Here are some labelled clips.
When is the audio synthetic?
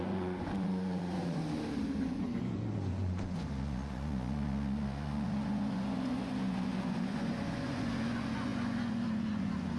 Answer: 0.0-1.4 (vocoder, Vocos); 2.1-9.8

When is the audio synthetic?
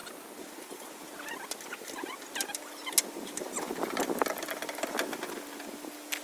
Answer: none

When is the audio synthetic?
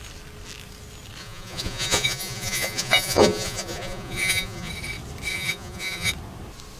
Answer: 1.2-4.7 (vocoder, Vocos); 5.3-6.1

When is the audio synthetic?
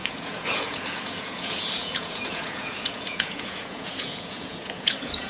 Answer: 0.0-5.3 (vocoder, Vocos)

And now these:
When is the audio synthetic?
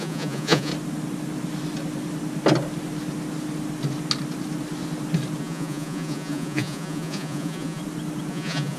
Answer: 0.0-0.7 (vocoder, Vocos); 5.4-7.8; 8.3-8.8